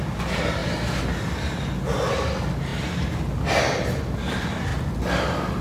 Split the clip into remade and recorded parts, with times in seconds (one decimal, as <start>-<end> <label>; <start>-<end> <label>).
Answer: 0.0-5.6 recorded